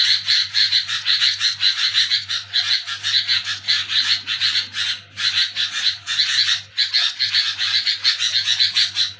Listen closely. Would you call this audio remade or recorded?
recorded